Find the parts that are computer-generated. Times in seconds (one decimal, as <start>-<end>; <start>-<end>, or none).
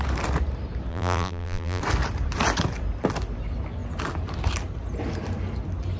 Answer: 0.9-1.8